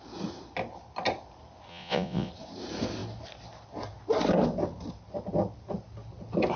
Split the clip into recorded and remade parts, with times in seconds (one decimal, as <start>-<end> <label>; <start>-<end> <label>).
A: 0.0-1.7 recorded; 1.7-2.3 remade; 2.3-6.6 recorded